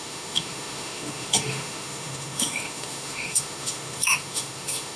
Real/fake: fake